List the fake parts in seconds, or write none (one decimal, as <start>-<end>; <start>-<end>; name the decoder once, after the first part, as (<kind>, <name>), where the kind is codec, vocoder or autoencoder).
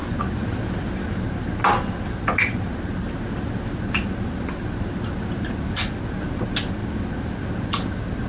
none